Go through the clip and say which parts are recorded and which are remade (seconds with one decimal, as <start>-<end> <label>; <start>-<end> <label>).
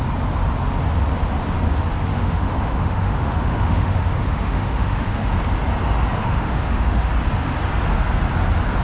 0.0-2.1 recorded; 2.1-5.3 remade; 5.3-6.2 recorded; 6.2-7.1 remade; 7.1-8.8 recorded